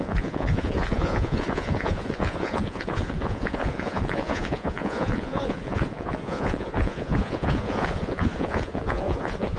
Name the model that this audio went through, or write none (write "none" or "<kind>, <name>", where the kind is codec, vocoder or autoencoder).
vocoder, Vocos